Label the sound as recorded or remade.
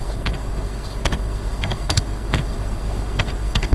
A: remade